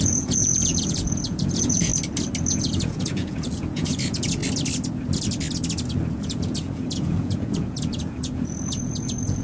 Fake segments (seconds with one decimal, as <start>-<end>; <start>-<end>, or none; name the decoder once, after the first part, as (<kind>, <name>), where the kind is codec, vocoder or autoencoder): 0.0-1.9 (vocoder, Vocos); 2.5-4.4; 6.1-9.4